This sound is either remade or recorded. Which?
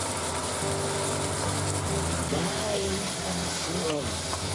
recorded